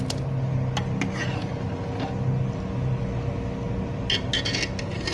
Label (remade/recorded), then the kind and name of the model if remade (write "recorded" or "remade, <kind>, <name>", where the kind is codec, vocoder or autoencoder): recorded